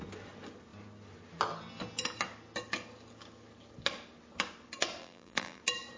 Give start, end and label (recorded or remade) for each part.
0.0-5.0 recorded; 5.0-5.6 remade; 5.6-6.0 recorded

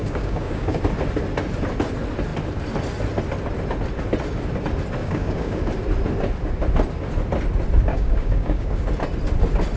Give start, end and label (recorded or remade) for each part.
0.0-0.8 remade; 0.8-5.0 recorded; 5.0-5.7 remade; 5.7-7.9 recorded; 7.9-8.9 remade; 8.9-9.8 recorded

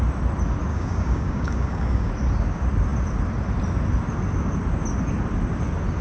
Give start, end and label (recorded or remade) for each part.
0.0-0.7 recorded; 0.7-2.1 remade; 2.1-6.0 recorded

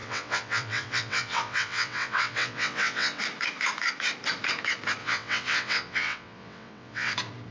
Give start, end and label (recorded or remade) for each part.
0.0-3.2 remade; 3.2-5.0 recorded; 5.0-7.1 remade; 7.1-7.5 recorded